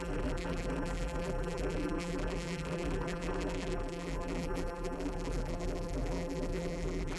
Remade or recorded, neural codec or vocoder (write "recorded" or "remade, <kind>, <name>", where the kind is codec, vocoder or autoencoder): remade, vocoder, BigVGAN v2